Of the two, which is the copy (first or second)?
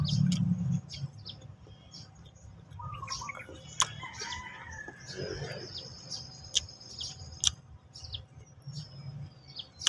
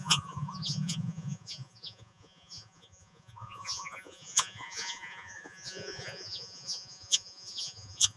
second